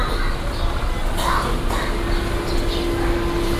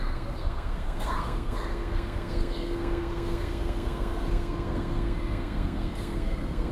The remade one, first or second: second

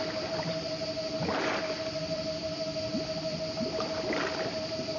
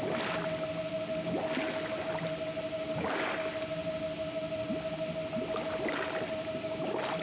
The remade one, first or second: first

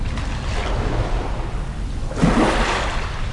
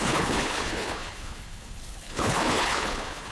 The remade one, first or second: second